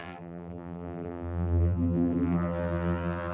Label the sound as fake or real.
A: fake